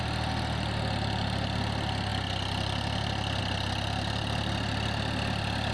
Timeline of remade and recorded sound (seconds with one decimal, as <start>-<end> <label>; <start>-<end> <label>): 0.0-5.7 recorded